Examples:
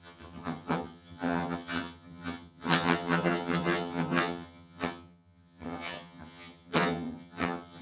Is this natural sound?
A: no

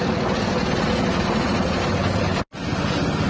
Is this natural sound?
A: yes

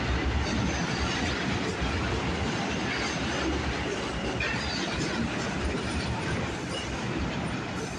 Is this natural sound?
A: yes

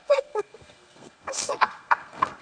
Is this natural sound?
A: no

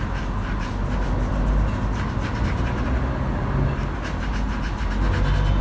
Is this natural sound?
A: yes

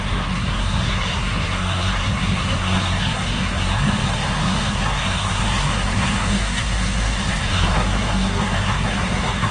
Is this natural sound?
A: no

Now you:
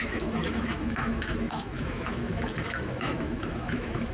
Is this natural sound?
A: no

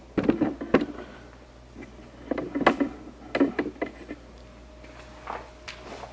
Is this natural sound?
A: yes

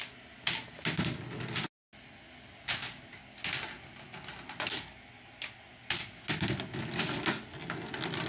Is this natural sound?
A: yes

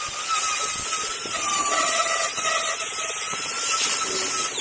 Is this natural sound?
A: yes